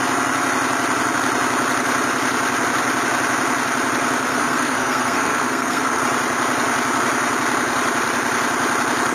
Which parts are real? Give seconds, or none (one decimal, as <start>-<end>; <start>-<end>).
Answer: 0.0-4.3; 6.0-9.1